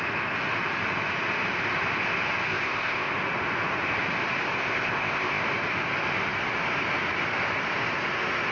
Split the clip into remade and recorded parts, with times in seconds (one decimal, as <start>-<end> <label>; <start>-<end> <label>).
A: 0.0-2.5 recorded; 2.5-3.1 remade; 3.1-4.6 recorded; 4.6-5.4 remade; 5.4-8.5 recorded